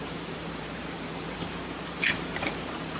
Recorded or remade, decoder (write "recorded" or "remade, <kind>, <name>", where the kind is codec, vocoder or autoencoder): remade, vocoder, BigVGAN v2